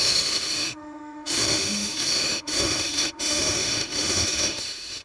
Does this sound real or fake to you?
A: fake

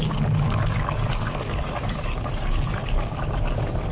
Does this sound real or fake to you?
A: fake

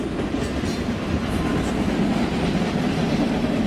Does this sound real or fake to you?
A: real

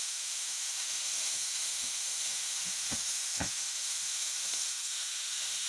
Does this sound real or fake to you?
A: fake